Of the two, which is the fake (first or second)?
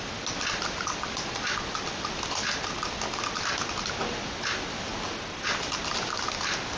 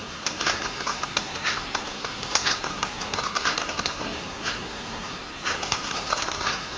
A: second